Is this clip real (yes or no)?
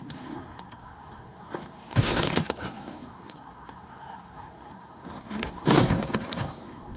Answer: no